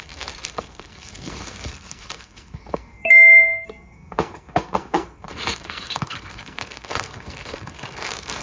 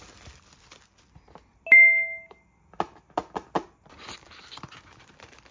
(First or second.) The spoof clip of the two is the first